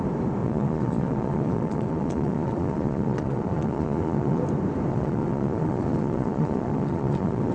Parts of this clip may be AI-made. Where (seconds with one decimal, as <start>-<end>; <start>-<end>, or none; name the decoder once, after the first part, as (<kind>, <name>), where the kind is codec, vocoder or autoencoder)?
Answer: 0.4-4.4 (vocoder, Vocos); 4.9-7.5